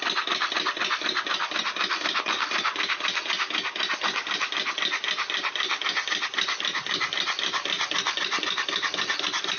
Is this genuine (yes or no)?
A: yes